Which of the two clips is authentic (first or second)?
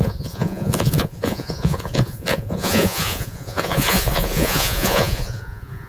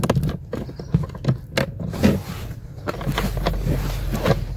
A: second